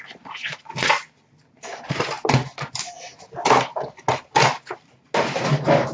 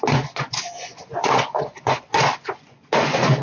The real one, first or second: first